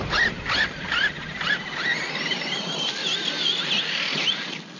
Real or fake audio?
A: real